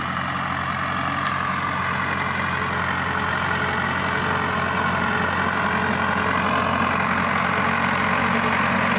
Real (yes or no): yes